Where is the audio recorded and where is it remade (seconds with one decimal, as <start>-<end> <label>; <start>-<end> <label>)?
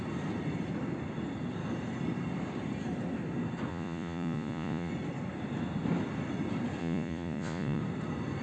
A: 0.0-3.7 recorded; 3.7-4.9 remade; 4.9-6.8 recorded; 6.8-7.8 remade; 7.8-8.4 recorded